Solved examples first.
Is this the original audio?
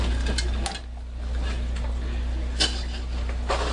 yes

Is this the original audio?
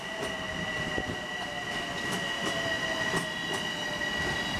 yes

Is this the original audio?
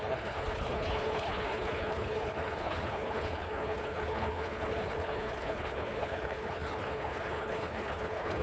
no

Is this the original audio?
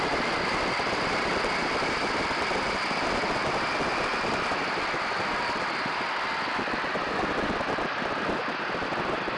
yes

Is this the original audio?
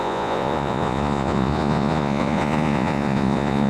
no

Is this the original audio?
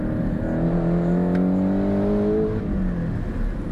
yes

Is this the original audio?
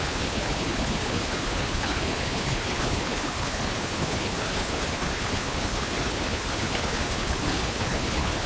no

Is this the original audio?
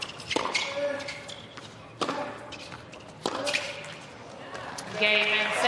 yes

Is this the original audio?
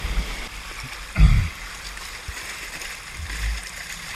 yes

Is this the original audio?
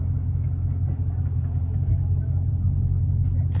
yes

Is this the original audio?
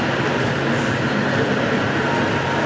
yes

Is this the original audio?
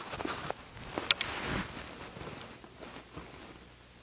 yes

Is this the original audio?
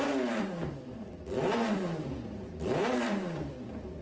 no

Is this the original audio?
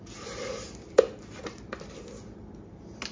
yes